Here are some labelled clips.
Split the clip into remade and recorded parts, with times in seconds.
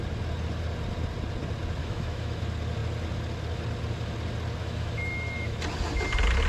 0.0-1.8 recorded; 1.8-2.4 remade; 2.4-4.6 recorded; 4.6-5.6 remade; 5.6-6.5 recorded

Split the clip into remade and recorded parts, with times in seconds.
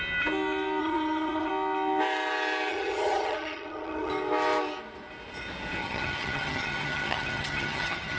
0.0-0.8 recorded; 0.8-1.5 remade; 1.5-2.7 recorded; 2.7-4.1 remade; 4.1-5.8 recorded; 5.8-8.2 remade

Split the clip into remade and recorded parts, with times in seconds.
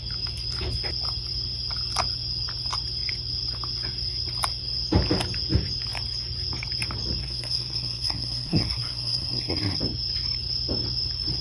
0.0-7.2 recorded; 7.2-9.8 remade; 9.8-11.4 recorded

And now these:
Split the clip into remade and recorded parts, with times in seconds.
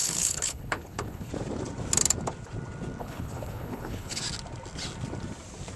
0.0-1.3 remade; 1.3-3.0 recorded; 3.0-4.2 remade; 4.2-5.8 recorded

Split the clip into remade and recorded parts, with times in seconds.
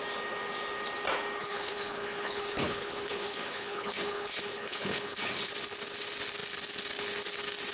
0.0-1.4 recorded; 1.4-5.5 remade; 5.5-7.7 recorded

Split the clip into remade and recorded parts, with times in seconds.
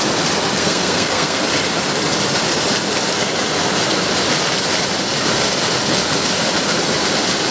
0.0-0.6 recorded; 0.6-1.4 remade; 1.4-7.5 recorded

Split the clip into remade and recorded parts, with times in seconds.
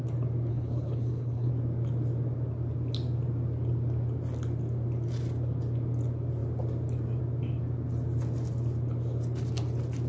0.0-0.5 recorded; 0.5-1.5 remade; 1.5-10.1 recorded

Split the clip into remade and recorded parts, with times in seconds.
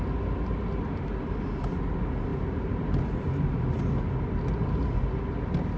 0.0-5.8 recorded